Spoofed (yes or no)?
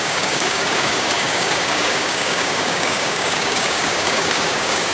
yes